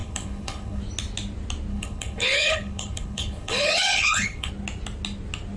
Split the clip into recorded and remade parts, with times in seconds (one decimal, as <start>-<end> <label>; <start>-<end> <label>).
0.0-0.8 remade; 0.8-1.7 recorded; 1.7-4.5 remade; 4.5-5.6 recorded